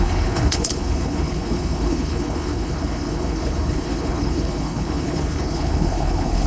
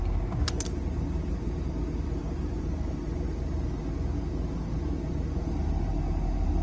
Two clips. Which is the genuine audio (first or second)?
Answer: second